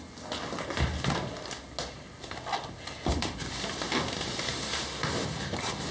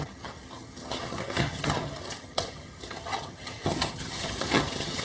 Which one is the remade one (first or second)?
second